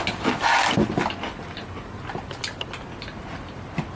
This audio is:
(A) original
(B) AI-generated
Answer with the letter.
A